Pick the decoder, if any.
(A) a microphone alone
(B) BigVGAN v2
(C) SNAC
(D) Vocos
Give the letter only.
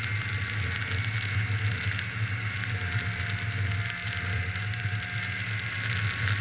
A